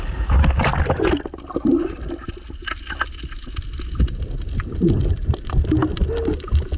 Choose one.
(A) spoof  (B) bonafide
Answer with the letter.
B